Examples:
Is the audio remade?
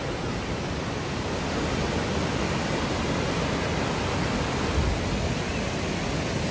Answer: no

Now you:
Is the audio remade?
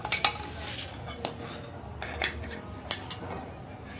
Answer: no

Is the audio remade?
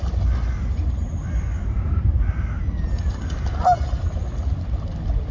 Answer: no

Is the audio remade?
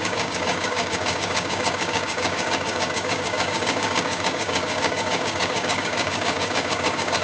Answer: yes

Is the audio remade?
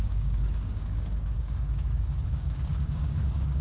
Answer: yes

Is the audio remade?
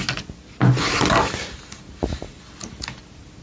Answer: no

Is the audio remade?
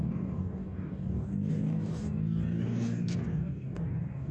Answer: yes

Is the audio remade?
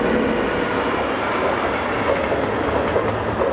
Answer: no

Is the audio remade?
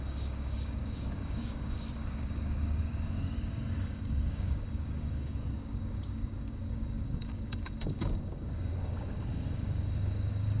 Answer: yes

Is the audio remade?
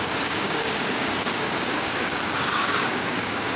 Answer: yes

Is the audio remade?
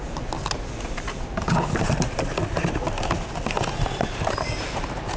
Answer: no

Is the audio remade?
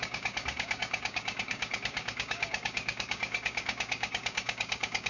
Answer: yes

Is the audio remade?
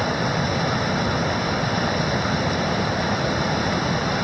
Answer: no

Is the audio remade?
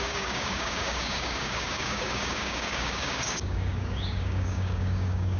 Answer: yes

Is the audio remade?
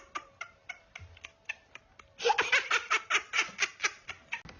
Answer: no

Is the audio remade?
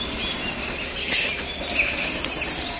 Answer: no